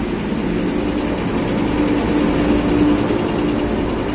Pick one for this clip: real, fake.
real